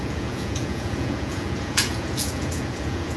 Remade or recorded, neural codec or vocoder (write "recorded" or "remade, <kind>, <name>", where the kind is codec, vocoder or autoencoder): remade, vocoder, Vocos